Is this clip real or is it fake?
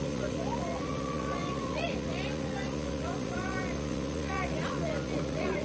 fake